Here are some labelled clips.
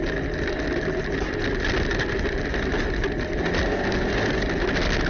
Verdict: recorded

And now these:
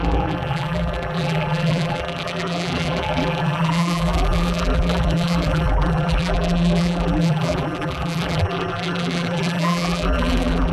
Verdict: remade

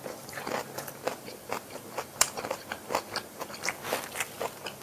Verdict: remade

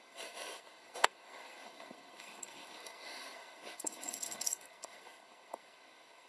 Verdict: remade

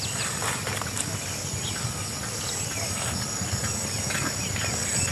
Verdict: recorded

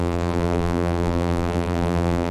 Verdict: remade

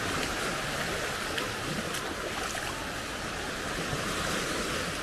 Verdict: recorded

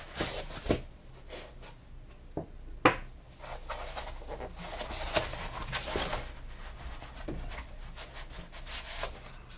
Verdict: recorded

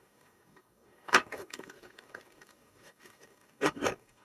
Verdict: remade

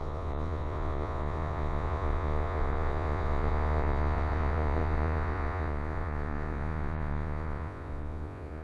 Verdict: remade